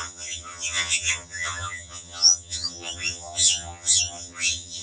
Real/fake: fake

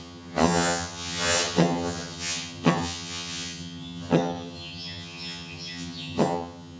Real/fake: fake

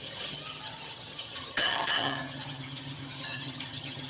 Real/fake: fake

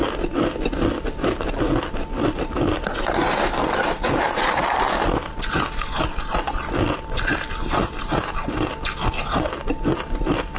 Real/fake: real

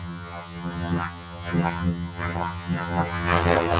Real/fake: fake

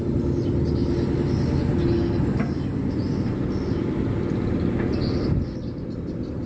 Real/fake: real